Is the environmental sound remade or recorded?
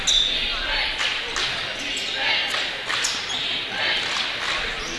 recorded